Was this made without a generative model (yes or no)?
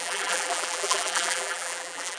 no